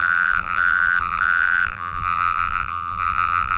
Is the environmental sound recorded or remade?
remade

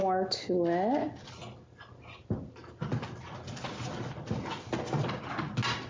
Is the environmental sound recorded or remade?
recorded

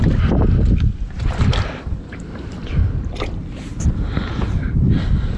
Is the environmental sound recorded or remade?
recorded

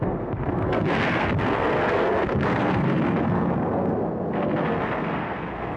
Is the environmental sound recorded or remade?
remade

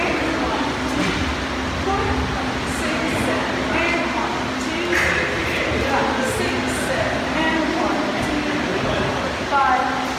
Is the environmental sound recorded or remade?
recorded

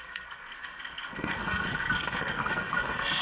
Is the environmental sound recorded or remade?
remade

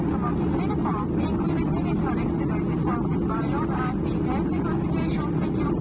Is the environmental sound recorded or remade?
recorded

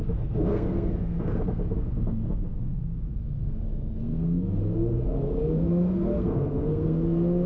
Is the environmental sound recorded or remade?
remade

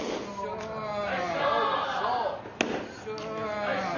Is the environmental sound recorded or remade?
recorded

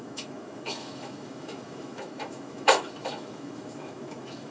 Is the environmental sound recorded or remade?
remade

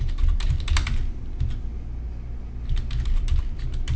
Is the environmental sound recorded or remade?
recorded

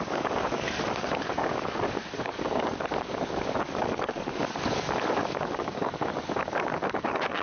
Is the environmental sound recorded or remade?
remade